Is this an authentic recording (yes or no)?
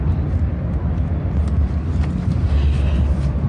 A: yes